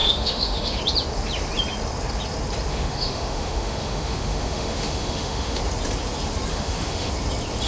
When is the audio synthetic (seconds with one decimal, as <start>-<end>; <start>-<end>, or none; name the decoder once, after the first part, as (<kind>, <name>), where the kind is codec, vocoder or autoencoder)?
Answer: 0.0-0.8 (autoencoder, DAC-VAE); 2.7-5.6; 6.5-7.1